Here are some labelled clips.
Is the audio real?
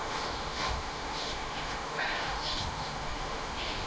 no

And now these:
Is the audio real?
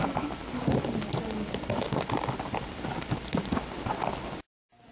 yes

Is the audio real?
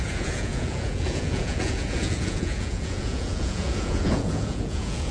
no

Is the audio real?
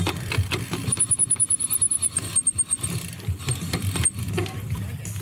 yes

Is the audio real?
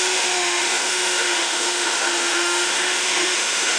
no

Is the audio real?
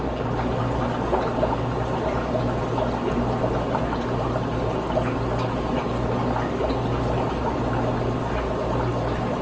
yes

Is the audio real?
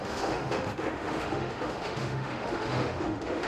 no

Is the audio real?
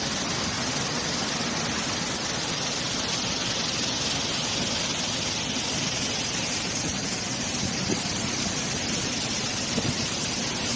yes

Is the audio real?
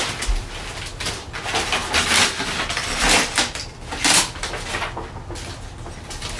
yes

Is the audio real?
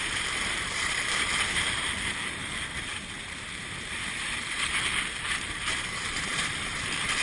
no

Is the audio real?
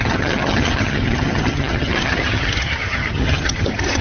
no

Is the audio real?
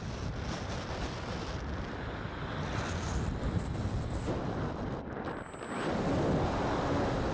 yes